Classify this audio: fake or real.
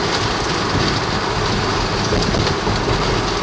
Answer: real